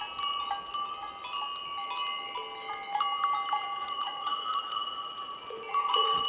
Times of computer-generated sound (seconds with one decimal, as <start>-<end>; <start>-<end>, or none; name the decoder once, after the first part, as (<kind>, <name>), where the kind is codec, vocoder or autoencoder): 3.8-6.3 (vocoder, Vocos)